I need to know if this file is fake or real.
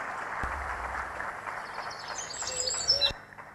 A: real